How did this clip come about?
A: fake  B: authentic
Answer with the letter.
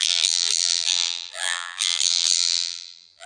A